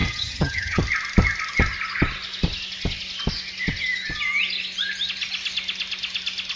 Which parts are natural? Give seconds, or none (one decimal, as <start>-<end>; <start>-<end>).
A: 0.8-6.6